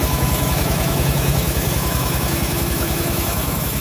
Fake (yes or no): yes